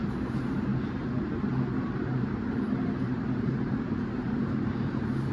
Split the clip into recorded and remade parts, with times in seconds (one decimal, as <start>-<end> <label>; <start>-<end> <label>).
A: 0.0-0.7 remade; 0.7-1.8 recorded; 1.8-5.3 remade